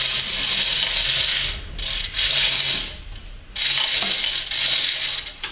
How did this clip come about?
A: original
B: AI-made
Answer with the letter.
A